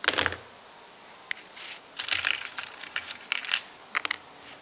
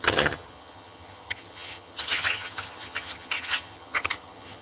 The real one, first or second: first